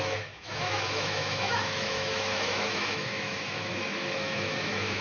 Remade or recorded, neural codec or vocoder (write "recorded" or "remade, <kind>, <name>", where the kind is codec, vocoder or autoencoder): remade, autoencoder, DAC-VAE